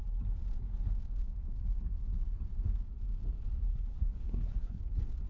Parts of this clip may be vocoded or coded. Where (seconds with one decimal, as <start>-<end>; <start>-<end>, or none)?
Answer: 3.7-4.8